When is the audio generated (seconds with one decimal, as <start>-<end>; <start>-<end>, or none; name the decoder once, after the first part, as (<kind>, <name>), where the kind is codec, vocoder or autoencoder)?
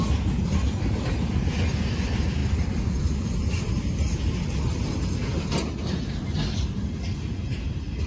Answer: 2.4-3.6 (vocoder, BigVGAN v2)